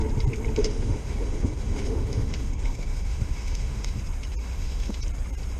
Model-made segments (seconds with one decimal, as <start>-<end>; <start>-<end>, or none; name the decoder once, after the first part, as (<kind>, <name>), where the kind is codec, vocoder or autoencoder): 0.6-4.0 (autoencoder, DAC-VAE); 4.4-5.0

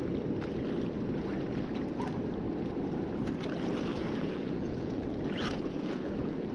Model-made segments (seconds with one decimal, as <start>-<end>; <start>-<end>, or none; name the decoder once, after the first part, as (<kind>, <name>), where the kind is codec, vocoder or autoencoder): 3.9-6.5 (vocoder, Vocos)

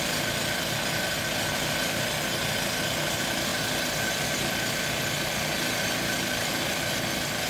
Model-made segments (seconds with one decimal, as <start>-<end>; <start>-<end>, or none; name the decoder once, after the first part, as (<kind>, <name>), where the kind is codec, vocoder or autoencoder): none